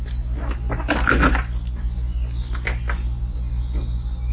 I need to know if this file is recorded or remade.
recorded